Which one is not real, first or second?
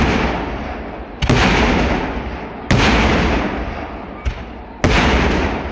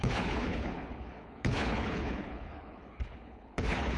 second